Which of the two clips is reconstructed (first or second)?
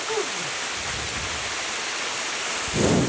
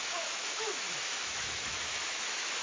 second